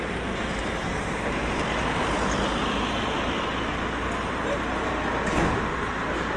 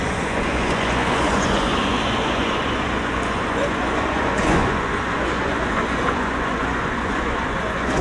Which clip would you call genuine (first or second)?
first